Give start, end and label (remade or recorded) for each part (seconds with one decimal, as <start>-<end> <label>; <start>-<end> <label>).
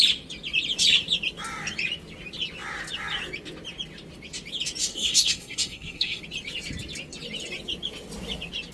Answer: 0.0-4.9 recorded; 4.9-6.2 remade; 6.2-8.7 recorded